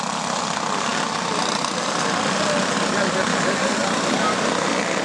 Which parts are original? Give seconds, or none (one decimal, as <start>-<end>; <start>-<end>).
0.0-5.0